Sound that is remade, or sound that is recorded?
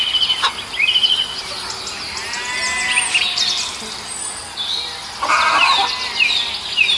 recorded